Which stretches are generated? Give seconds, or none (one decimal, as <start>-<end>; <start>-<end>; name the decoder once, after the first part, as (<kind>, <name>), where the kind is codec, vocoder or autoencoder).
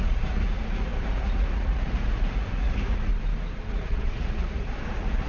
0.0-3.1 (vocoder, Vocos); 3.7-5.3